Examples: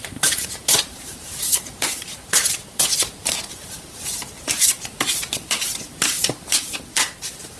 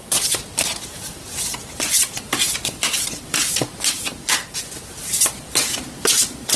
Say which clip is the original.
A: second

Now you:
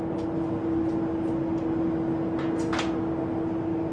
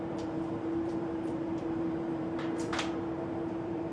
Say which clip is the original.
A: first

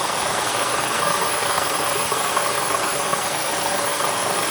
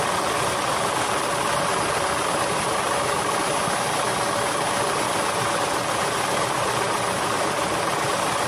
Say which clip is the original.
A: second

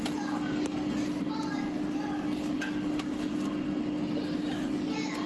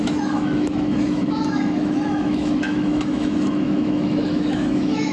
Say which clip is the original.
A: first